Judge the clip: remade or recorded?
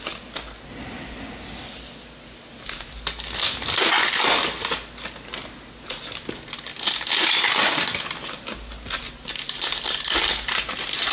recorded